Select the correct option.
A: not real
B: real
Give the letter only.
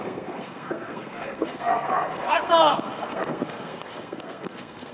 A